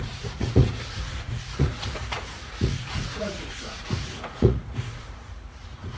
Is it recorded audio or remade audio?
remade